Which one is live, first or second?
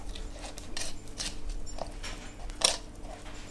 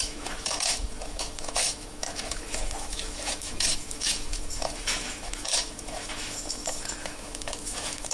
first